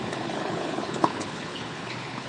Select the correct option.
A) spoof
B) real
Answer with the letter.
A